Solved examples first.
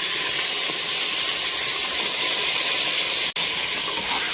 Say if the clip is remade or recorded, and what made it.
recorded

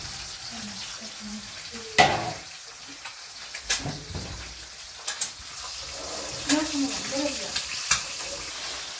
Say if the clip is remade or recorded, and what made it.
recorded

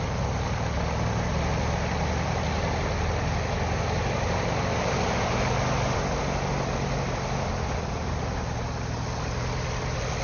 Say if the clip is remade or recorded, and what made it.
recorded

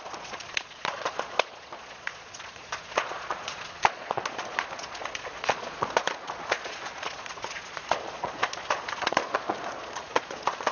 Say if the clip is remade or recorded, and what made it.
remade, vocoder, Vocos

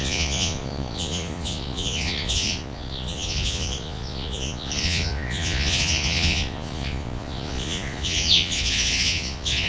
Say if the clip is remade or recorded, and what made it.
remade, vocoder, Vocos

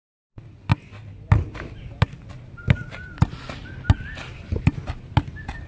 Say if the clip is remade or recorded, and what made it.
recorded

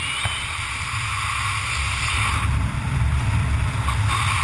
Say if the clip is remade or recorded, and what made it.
recorded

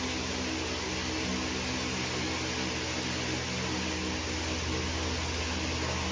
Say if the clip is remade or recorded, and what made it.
recorded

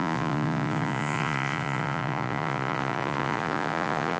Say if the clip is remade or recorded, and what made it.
remade, vocoder, Vocos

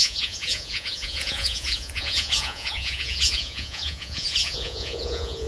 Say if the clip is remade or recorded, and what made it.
remade, vocoder, Vocos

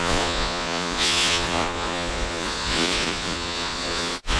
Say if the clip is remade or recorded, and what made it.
remade, vocoder, Vocos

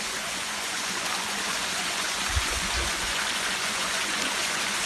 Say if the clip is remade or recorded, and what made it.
remade, vocoder, Vocos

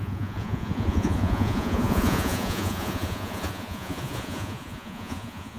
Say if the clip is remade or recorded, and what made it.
remade, vocoder, Vocos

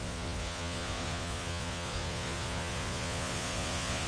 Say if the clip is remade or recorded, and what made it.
remade, vocoder, Vocos